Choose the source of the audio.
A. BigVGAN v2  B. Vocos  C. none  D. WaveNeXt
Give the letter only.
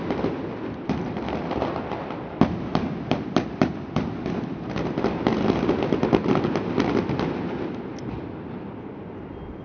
C